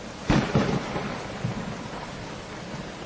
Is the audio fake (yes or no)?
no